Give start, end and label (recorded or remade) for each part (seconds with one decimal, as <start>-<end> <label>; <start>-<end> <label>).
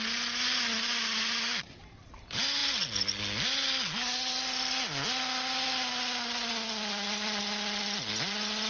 0.0-8.7 recorded